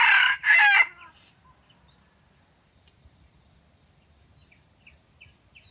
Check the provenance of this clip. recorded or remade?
recorded